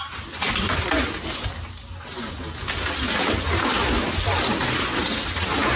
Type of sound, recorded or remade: recorded